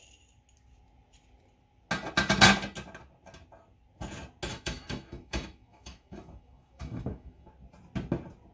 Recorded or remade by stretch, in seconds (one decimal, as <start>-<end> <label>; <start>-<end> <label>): 0.0-4.5 recorded; 4.5-7.5 remade; 7.5-8.5 recorded